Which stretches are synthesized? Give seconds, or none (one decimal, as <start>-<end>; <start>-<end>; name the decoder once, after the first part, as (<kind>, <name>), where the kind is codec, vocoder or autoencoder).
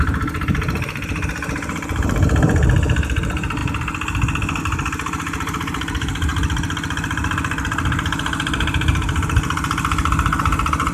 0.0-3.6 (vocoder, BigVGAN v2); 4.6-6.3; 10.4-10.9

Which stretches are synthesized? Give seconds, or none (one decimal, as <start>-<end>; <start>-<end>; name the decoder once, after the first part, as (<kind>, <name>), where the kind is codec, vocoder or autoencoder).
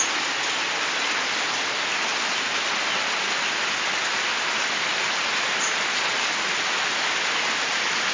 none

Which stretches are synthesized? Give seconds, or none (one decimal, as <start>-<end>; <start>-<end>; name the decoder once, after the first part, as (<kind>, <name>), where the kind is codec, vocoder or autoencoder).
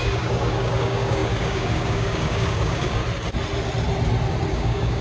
0.0-3.0 (codec, DAC); 4.5-5.0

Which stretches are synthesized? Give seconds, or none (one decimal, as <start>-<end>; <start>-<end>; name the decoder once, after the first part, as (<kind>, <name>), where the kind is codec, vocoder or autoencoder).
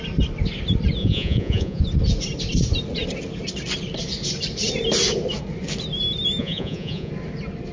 1.0-1.8 (vocoder, Vocos); 6.4-7.1